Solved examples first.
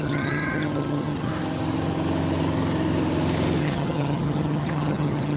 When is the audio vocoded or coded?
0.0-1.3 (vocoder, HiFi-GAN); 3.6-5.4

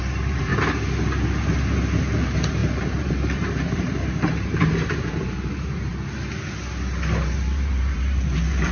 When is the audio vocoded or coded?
0.0-0.5 (vocoder, BigVGAN v2); 2.0-5.9; 7.2-8.7

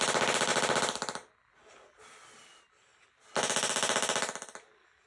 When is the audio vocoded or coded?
none